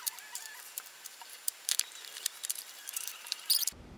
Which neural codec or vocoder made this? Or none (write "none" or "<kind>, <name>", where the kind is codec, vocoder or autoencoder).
vocoder, BigVGAN v2